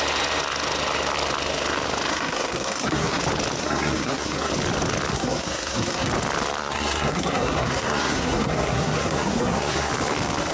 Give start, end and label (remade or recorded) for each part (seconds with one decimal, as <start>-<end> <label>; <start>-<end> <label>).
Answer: 0.0-2.1 recorded; 2.1-3.2 remade; 3.2-3.6 recorded; 3.6-4.5 remade; 4.5-5.1 recorded; 5.1-6.1 remade; 6.1-6.6 recorded; 6.6-9.9 remade; 9.9-10.5 recorded